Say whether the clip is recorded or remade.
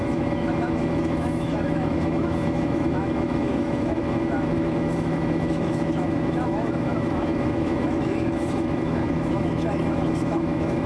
remade